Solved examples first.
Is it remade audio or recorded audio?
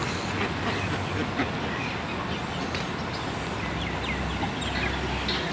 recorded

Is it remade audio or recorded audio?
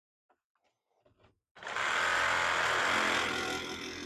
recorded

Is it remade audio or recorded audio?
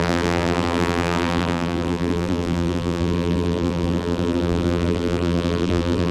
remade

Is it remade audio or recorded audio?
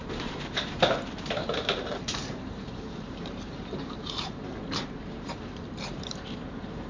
remade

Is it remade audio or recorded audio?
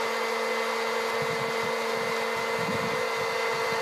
recorded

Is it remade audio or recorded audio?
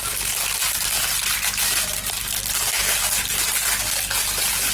recorded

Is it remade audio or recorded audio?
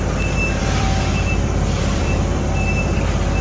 remade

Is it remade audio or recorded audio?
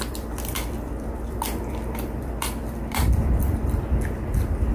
remade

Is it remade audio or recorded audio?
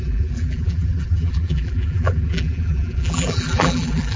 remade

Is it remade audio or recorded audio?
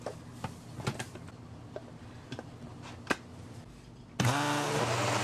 recorded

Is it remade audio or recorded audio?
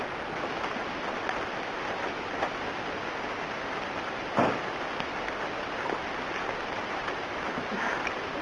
recorded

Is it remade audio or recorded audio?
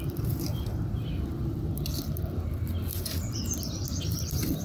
remade